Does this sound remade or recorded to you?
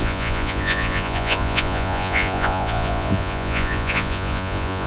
remade